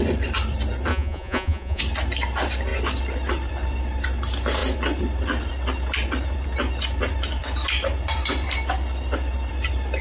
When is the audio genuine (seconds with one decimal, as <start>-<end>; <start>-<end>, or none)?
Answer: 0.0-0.9; 1.8-10.0